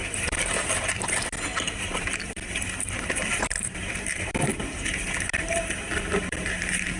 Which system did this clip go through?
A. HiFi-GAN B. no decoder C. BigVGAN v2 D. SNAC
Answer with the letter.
C